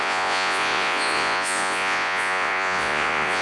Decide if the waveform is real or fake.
fake